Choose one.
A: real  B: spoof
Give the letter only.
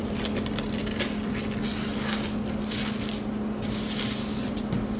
A